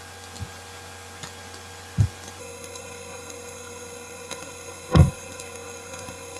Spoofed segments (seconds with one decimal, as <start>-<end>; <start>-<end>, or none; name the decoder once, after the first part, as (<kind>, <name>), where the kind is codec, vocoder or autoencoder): 2.4-6.4 (codec, SNAC)